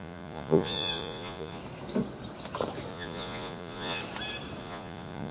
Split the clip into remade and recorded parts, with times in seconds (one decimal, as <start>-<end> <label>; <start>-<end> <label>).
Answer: 0.0-1.6 remade; 1.6-2.9 recorded; 2.9-4.0 remade; 4.0-4.6 recorded; 4.6-5.3 remade

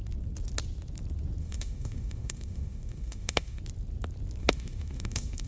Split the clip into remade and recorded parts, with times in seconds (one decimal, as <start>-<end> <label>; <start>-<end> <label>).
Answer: 0.0-1.4 recorded; 1.4-3.6 remade; 3.6-4.4 recorded; 4.4-5.5 remade

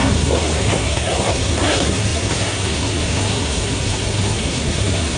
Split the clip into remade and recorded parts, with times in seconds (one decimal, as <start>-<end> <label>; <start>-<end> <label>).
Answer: 0.0-5.2 remade

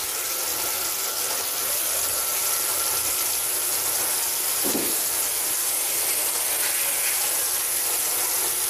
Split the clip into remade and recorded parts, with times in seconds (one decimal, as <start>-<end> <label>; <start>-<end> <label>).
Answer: 0.0-2.4 recorded; 2.4-6.3 remade; 6.3-8.7 recorded

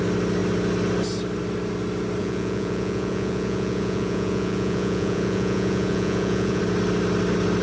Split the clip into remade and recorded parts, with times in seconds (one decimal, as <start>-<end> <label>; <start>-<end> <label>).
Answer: 0.0-2.2 recorded; 2.2-6.6 remade; 6.6-7.6 recorded

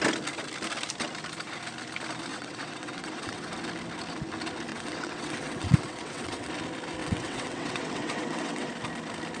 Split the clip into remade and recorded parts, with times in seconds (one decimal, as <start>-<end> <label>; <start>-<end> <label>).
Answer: 0.0-2.3 recorded; 2.3-3.5 remade; 3.5-4.7 recorded; 4.7-6.5 remade; 6.5-7.0 recorded; 7.0-8.7 remade; 8.7-9.4 recorded

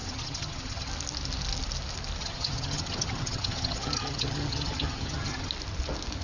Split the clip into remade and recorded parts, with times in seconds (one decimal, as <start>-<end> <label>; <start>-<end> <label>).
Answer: 0.0-0.9 remade; 0.9-2.2 recorded; 2.2-5.5 remade; 5.5-6.2 recorded

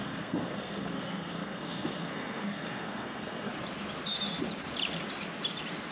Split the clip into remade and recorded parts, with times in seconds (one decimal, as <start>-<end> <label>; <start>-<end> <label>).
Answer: 0.0-3.5 remade; 3.5-5.9 recorded